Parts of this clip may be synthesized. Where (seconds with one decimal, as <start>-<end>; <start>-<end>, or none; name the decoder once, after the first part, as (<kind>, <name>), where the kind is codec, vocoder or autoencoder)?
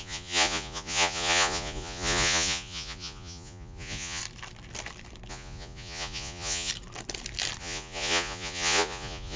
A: 0.0-4.2 (vocoder, Vocos); 5.3-6.7; 7.6-9.4